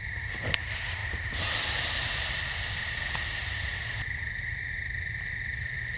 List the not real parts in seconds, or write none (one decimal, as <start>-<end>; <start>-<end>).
none